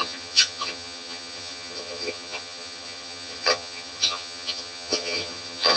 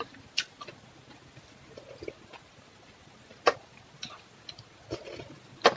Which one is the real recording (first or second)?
second